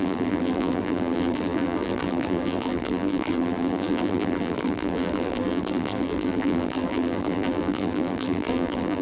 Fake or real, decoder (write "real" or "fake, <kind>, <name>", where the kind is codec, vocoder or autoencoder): fake, vocoder, BigVGAN v2